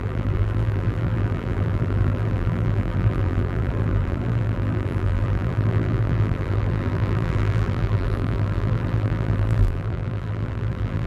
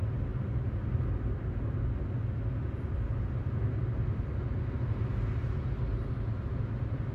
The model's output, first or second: first